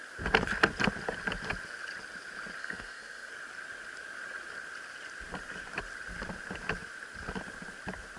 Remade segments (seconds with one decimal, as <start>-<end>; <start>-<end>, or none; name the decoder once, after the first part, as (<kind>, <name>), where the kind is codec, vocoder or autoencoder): 2.6-3.3 (codec, SNAC)